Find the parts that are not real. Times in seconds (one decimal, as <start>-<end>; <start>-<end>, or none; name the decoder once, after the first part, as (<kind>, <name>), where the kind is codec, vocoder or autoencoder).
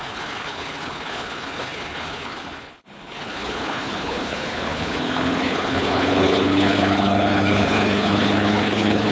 0.0-9.1 (codec, HILCodec)